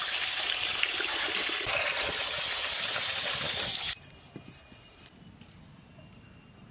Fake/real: real